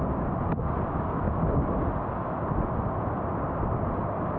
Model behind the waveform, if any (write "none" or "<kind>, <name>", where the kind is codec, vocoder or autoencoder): none